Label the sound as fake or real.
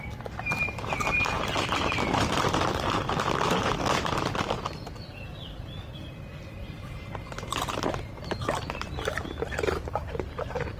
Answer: real